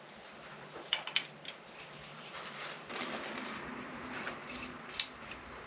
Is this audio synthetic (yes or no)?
yes